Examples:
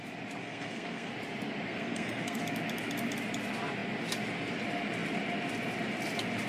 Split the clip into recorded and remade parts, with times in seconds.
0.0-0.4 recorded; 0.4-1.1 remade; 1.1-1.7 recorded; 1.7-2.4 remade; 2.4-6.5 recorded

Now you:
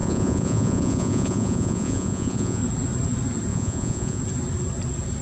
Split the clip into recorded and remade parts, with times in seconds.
0.0-2.6 remade; 2.6-3.5 recorded; 3.5-4.2 remade; 4.2-5.2 recorded